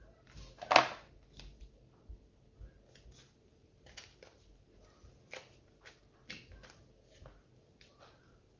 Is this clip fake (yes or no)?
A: no